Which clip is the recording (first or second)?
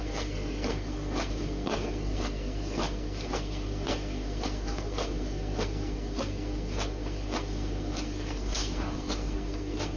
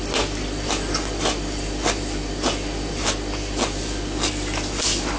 second